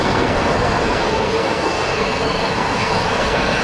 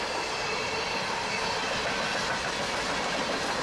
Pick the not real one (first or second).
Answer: first